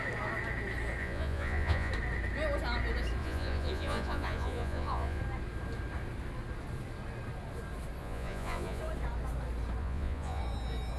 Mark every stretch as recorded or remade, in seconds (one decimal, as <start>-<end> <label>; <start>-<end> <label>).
0.0-1.0 recorded; 1.0-1.9 remade; 1.9-3.2 recorded; 3.2-5.2 remade; 5.2-8.0 recorded; 8.0-8.8 remade; 8.8-9.8 recorded; 9.8-10.4 remade; 10.4-11.0 recorded